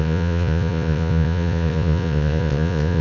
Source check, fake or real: fake